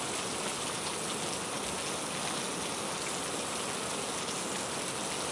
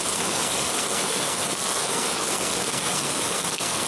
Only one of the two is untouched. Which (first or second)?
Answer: first